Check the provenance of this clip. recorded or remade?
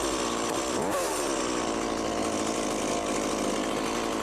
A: recorded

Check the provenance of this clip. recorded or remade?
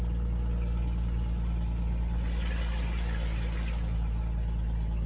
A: recorded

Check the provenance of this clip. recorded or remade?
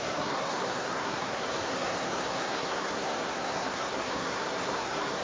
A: remade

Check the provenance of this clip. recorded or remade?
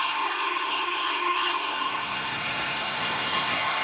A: remade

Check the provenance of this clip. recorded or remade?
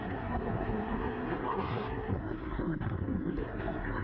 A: remade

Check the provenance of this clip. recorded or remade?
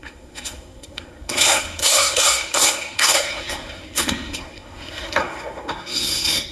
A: remade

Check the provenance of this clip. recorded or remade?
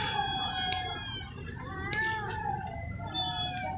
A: recorded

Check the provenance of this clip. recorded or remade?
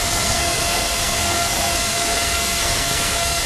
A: remade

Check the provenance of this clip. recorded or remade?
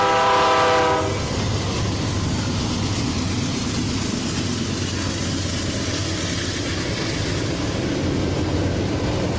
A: recorded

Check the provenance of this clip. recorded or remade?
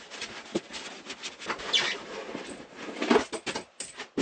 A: recorded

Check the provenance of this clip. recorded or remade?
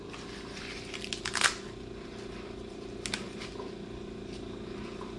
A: recorded